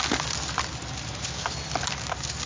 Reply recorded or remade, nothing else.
recorded